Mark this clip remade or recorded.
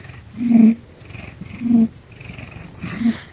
recorded